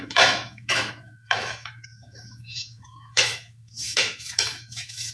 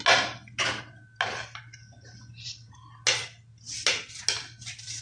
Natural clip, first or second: second